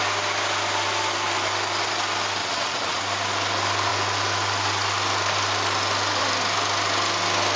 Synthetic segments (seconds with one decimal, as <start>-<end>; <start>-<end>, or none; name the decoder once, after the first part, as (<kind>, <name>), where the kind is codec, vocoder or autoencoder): 2.4-3.0 (vocoder, Vocos)